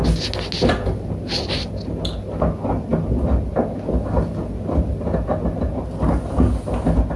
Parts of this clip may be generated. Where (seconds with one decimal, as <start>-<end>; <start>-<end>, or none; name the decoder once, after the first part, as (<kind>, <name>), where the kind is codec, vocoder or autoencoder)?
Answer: none